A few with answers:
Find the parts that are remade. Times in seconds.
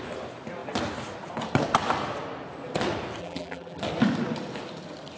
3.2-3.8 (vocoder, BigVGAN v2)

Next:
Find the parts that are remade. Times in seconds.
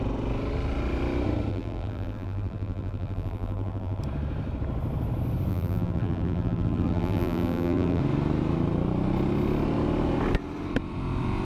1.5-4.0 (vocoder, BigVGAN v2); 5.5-8.0